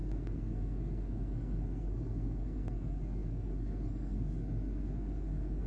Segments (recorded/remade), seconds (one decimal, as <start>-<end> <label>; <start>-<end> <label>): 0.0-5.7 remade